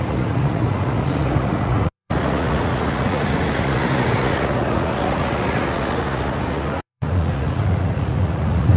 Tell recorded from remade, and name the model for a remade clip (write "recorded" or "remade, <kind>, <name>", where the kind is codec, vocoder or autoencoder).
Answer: remade, vocoder, Vocos